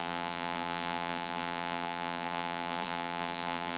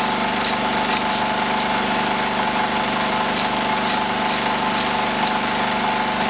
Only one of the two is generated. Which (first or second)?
first